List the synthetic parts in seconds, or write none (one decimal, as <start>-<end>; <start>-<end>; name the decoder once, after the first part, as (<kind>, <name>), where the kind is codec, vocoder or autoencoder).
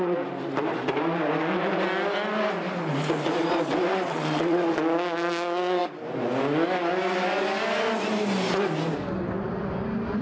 3.9-4.7 (vocoder, WaveNeXt)